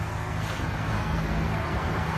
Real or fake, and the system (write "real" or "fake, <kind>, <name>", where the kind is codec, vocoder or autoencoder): fake, codec, SNAC